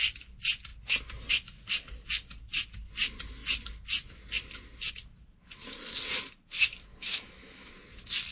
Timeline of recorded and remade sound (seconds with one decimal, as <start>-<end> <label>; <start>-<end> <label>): 0.0-6.9 recorded; 6.9-7.7 remade; 7.7-8.3 recorded